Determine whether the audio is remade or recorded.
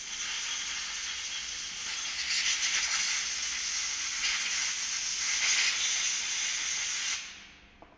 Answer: recorded